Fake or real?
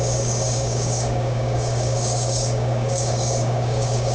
fake